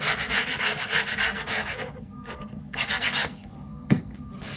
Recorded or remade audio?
remade